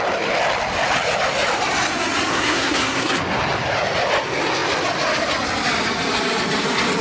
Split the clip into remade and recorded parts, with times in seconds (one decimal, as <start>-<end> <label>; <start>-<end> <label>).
0.0-2.3 recorded; 2.3-3.4 remade; 3.4-7.0 recorded